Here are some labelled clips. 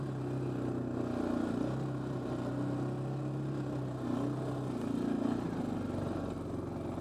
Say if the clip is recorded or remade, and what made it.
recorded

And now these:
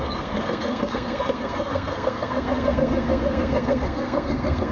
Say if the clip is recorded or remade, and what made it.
remade, codec, SNAC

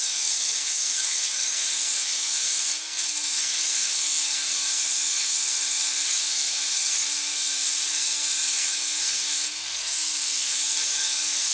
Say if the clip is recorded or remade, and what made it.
remade, codec, SNAC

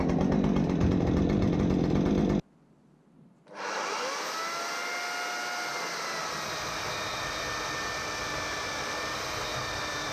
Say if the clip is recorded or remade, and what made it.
recorded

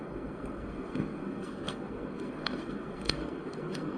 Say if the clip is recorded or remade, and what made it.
remade, codec, SNAC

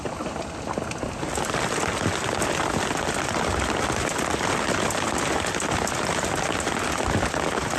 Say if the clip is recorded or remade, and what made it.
recorded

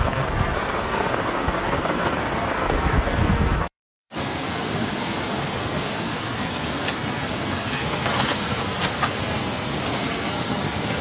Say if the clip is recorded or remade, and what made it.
remade, codec, SNAC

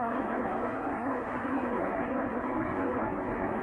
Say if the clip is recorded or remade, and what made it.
remade, codec, SNAC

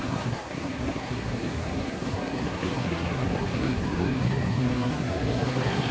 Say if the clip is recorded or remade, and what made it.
remade, codec, SNAC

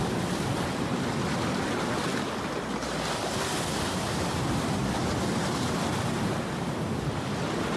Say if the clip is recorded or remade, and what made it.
recorded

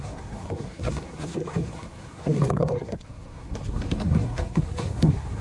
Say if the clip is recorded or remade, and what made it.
remade, codec, SNAC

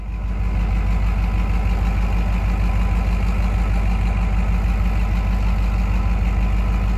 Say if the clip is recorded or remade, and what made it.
recorded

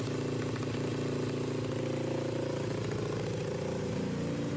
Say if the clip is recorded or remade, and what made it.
recorded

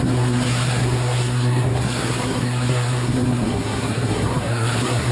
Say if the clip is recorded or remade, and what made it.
remade, codec, SNAC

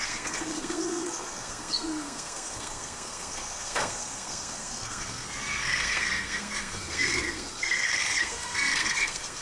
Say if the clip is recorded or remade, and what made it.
remade, codec, SNAC